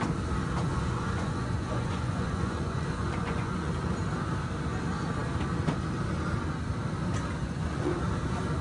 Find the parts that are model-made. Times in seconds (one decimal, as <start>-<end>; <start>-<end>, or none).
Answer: 0.6-3.7; 7.4-7.9